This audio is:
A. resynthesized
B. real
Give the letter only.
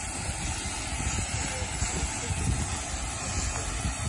B